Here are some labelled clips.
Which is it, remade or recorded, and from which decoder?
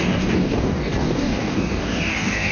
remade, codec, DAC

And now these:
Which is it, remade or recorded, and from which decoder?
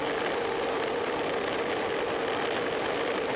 recorded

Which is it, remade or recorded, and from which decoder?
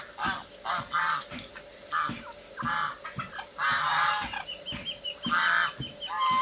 recorded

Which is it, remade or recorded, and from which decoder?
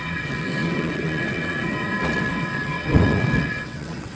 remade, vocoder, WaveNeXt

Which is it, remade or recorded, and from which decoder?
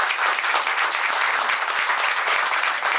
recorded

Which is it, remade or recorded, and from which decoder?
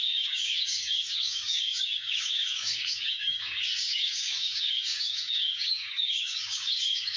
remade, codec, DAC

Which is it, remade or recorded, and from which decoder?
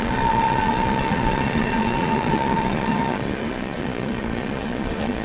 remade, vocoder, Vocos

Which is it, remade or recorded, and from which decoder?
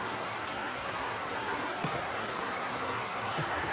remade, codec, SNAC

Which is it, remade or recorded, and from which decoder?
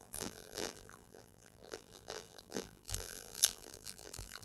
remade, vocoder, BigVGAN v2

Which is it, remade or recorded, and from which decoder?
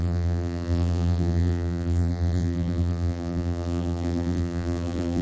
remade, vocoder, BigVGAN v2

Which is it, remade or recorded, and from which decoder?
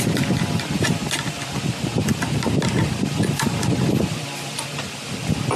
remade, vocoder, BigVGAN v2